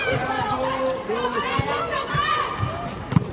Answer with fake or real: real